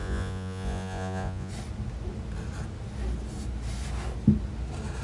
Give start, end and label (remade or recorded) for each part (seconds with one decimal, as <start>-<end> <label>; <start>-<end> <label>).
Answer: 0.0-1.5 remade; 1.5-5.0 recorded